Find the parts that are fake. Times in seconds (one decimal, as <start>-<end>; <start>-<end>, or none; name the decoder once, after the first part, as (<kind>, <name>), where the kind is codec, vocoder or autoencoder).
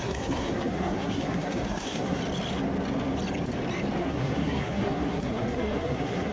0.0-2.2 (codec, SNAC); 4.0-6.3